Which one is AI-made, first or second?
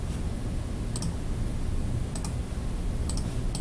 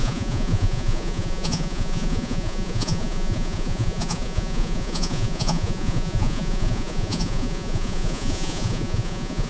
second